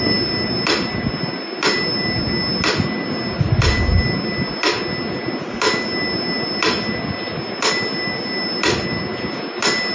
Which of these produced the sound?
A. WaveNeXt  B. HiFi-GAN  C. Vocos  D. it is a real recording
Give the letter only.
D